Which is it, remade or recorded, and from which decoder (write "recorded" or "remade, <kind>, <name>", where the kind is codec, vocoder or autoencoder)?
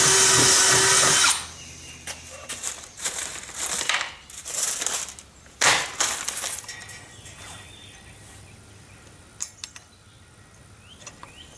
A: recorded